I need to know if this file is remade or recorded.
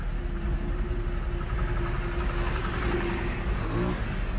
recorded